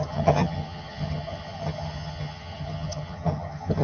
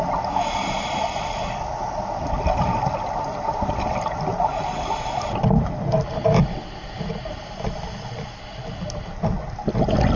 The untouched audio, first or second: second